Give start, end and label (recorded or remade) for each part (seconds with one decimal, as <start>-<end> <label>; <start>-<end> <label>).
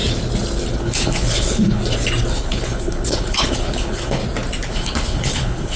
0.0-0.8 recorded; 0.8-1.8 remade; 1.8-2.3 recorded; 2.3-4.2 remade; 4.2-4.7 recorded; 4.7-5.8 remade